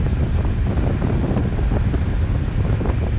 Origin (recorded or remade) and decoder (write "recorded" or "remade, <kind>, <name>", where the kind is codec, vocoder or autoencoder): recorded